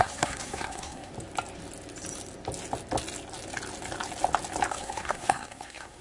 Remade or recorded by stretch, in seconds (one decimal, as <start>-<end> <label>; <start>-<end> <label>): 0.0-1.1 remade; 1.1-4.7 recorded; 4.7-6.0 remade